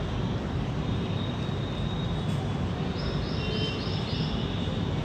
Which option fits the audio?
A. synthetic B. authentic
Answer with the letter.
B